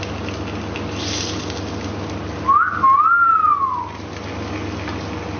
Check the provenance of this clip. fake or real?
real